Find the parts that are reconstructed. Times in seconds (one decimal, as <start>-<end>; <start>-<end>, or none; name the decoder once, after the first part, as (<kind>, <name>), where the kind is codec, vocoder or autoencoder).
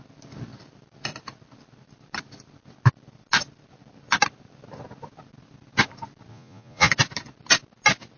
6.3-6.9 (vocoder, Vocos)